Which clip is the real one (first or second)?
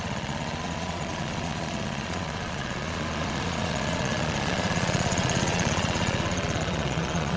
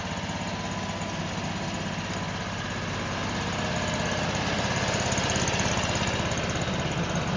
second